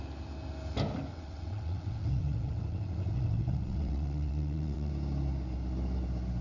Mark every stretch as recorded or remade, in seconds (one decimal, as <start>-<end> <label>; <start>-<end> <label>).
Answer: 0.0-1.1 recorded; 1.1-4.9 remade; 4.9-6.4 recorded